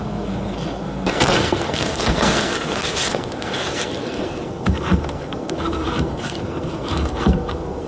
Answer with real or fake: fake